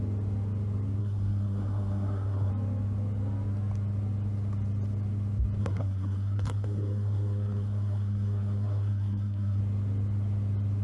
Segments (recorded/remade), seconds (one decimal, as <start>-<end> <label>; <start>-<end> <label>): 0.0-1.0 recorded; 1.0-2.5 remade; 2.5-5.6 recorded; 5.6-9.6 remade; 9.6-10.8 recorded